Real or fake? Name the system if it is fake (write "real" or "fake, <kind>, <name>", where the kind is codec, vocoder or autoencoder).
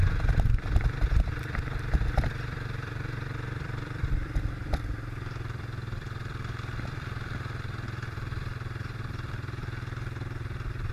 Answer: fake, vocoder, BigVGAN v2